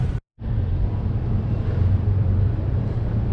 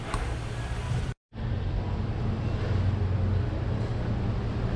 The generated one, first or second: first